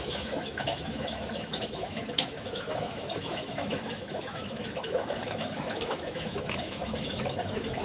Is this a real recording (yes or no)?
no